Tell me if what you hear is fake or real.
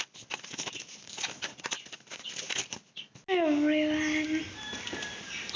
real